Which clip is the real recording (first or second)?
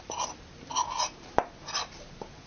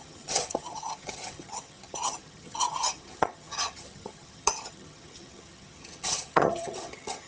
first